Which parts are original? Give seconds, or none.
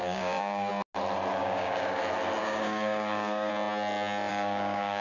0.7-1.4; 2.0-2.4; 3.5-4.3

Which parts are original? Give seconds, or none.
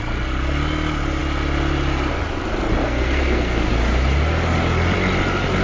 0.0-2.8; 3.7-5.6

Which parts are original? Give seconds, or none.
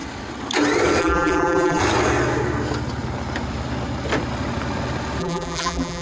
0.0-1.0; 1.8-5.2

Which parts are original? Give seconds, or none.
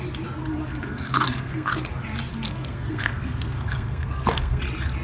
0.0-0.5; 1.9-2.3; 4.6-5.0